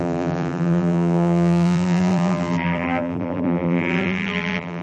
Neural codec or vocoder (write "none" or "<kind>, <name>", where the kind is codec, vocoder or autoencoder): vocoder, BigVGAN v2